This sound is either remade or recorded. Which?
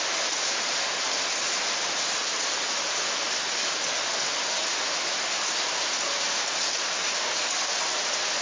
recorded